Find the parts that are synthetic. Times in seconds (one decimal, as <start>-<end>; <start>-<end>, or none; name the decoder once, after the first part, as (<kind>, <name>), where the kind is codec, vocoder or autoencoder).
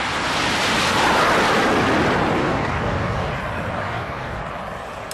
2.4-3.3 (codec, DAC); 3.8-4.4